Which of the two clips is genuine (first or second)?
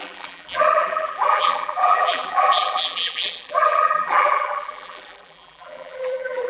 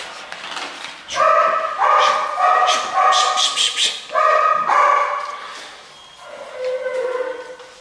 second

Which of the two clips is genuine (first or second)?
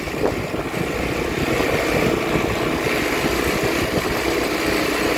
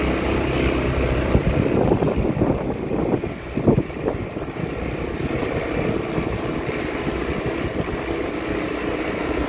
first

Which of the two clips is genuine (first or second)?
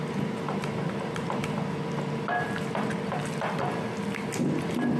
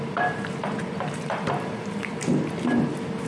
first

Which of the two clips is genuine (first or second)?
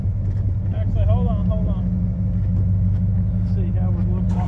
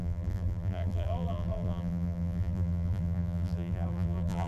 first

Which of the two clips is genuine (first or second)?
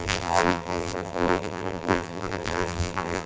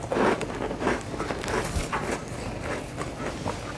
second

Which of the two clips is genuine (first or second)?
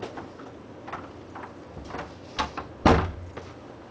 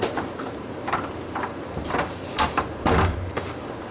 first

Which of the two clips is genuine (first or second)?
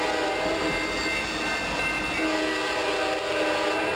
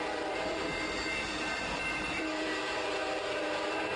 first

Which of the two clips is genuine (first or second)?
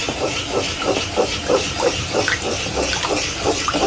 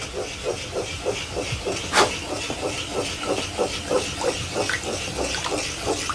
second